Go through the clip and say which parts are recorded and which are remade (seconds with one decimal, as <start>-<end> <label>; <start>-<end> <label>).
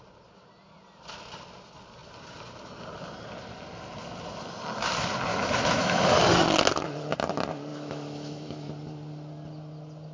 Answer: 0.0-5.3 recorded; 5.3-6.0 remade; 6.0-7.7 recorded; 7.7-8.7 remade; 8.7-10.1 recorded